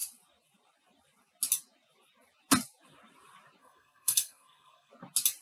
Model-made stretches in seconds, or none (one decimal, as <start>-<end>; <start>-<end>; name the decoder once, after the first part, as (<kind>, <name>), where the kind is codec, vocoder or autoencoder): 3.6-4.9 (codec, SNAC)